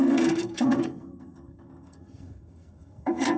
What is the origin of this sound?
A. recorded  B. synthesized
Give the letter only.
B